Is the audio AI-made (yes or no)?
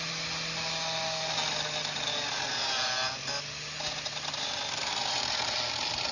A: no